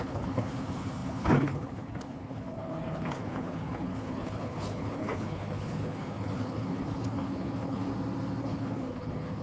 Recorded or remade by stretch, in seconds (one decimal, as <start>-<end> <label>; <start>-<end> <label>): 0.0-7.9 remade; 7.9-8.4 recorded; 8.4-9.4 remade